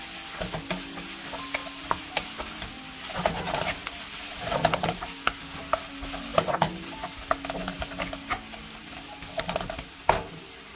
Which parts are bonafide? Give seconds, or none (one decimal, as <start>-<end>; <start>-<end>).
0.0-10.8